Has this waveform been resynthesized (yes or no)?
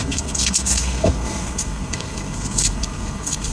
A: yes